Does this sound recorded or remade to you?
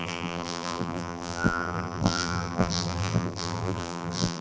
remade